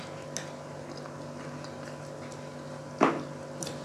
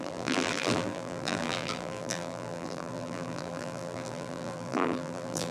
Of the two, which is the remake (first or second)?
second